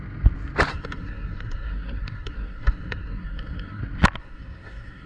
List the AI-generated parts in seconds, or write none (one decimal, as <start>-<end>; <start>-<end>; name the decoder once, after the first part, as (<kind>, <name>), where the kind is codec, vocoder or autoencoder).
0.7-3.8 (codec, SNAC); 4.2-5.1